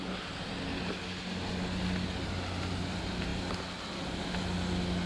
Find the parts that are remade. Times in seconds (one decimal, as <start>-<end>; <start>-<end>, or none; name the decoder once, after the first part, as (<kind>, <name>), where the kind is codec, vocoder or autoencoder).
none